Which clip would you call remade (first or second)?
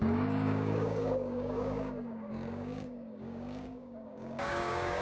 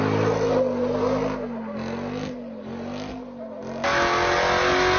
first